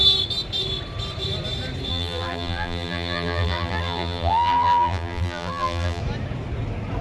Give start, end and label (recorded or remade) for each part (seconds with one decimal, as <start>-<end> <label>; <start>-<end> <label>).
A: 0.0-1.9 recorded; 1.9-6.0 remade; 6.0-7.0 recorded